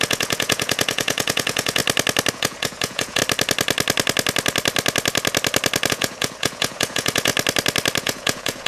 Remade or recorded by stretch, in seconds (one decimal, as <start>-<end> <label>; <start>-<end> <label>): 0.0-1.8 remade; 1.8-2.3 recorded; 2.3-3.2 remade; 3.2-5.9 recorded; 5.9-7.3 remade; 7.3-8.0 recorded; 8.0-8.7 remade